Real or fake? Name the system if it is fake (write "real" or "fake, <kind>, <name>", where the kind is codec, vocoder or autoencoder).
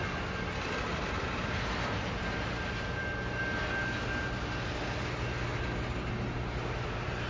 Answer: real